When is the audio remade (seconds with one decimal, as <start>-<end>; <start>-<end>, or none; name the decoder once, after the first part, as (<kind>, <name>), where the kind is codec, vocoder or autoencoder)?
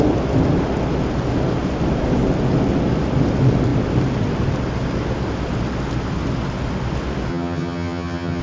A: 7.3-8.4 (vocoder, HiFi-GAN)